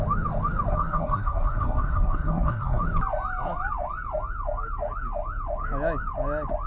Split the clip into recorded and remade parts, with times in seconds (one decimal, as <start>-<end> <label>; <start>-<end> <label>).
0.0-0.7 recorded; 0.7-2.8 remade; 2.8-6.7 recorded